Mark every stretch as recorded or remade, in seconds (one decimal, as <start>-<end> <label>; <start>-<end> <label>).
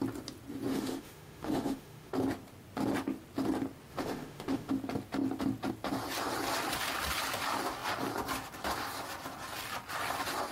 0.0-0.7 recorded; 0.7-2.1 remade; 2.1-3.9 recorded; 3.9-4.7 remade; 4.7-10.5 recorded